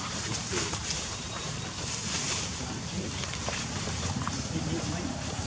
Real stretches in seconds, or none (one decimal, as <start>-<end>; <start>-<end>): 1.4-2.1